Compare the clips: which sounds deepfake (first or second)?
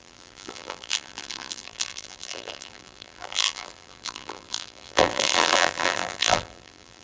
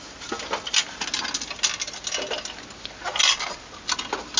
first